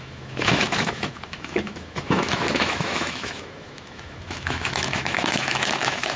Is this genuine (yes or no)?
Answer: no